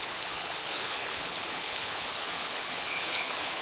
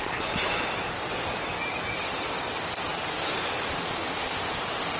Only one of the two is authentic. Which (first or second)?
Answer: second